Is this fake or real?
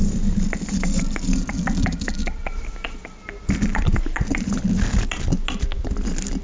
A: real